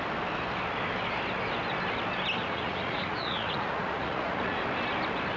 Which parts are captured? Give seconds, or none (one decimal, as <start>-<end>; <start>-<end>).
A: 0.0-2.4; 4.6-5.4